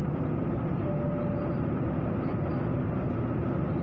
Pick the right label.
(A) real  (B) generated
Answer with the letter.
A